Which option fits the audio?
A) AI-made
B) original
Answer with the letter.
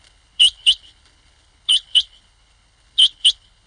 A